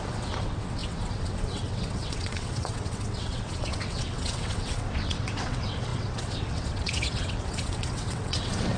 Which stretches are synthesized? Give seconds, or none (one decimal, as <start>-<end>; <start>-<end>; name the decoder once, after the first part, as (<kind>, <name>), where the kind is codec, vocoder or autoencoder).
0.0-8.8 (vocoder, WaveNeXt)